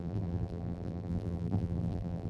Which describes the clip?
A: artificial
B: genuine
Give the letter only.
A